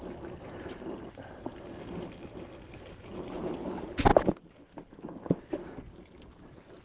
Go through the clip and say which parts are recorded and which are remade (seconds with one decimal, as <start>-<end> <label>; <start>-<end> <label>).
0.0-6.8 recorded